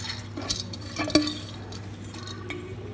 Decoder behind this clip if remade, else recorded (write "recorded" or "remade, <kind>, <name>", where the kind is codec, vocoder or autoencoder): recorded